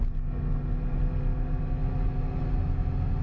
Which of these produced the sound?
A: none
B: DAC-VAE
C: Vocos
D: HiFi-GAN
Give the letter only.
A